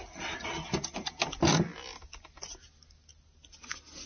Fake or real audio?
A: real